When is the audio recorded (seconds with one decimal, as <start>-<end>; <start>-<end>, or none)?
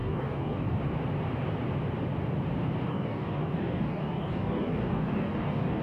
0.8-2.9